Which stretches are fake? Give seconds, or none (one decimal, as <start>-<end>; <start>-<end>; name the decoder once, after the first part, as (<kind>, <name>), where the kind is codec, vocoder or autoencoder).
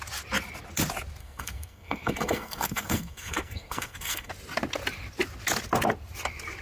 1.2-4.3 (codec, SNAC)